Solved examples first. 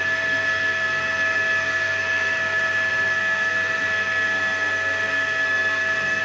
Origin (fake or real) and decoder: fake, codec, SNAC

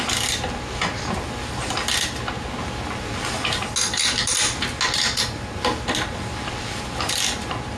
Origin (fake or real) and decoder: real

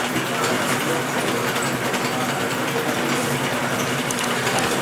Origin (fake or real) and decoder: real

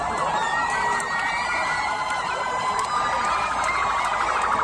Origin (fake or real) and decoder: fake, vocoder, BigVGAN v2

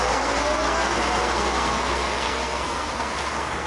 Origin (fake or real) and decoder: fake, codec, SNAC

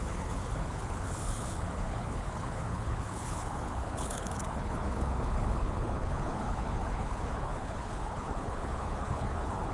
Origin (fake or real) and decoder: fake, codec, HILCodec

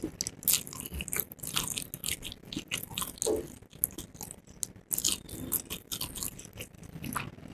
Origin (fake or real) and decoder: real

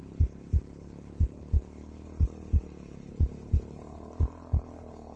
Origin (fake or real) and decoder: fake, codec, HILCodec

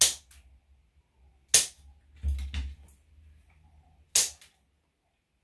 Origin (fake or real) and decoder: real